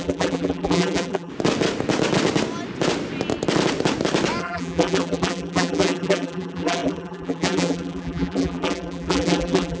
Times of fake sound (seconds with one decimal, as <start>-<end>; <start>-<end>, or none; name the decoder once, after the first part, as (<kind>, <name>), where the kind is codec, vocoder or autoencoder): 0.0-1.3 (vocoder, BigVGAN v2); 4.4-9.8